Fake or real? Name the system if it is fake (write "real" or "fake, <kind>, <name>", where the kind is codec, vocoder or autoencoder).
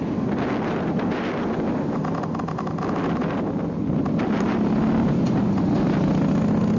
real